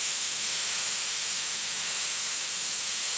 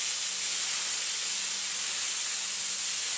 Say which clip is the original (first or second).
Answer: second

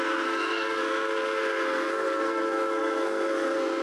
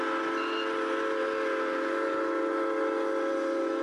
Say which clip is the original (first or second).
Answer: second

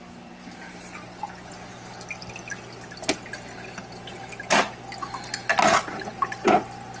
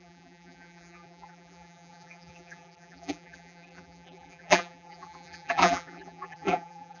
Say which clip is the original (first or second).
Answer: first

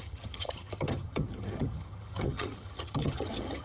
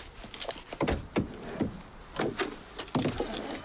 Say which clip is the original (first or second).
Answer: second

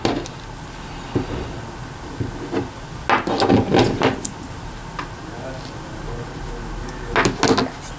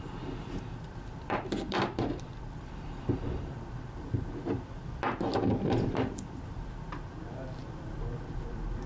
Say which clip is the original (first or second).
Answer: first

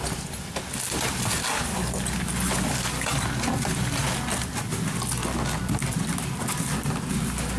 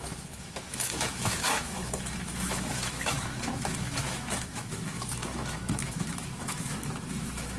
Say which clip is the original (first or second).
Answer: first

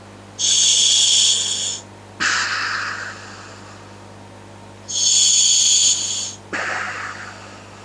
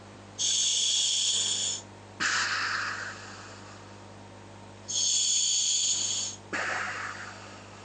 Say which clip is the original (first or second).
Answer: first